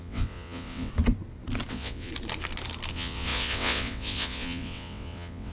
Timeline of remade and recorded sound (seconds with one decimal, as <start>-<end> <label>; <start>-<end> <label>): 0.0-0.9 remade; 0.9-1.7 recorded; 1.7-2.1 remade; 2.1-2.9 recorded; 2.9-5.5 remade